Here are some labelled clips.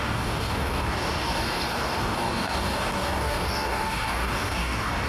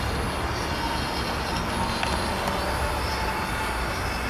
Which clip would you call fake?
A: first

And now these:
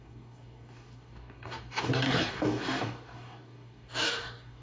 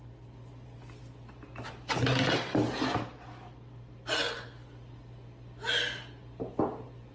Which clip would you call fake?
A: first